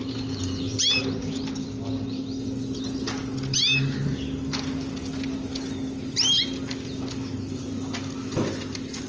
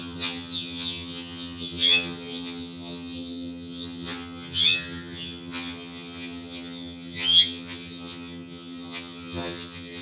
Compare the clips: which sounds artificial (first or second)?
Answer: second